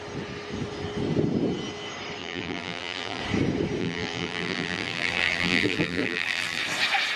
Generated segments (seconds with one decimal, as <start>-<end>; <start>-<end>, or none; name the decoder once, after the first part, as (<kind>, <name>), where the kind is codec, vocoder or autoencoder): 2.2-3.2 (vocoder, BigVGAN v2); 3.8-6.6